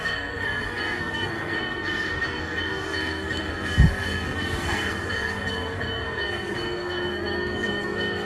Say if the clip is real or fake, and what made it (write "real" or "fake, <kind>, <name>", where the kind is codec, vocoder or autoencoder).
fake, codec, SNAC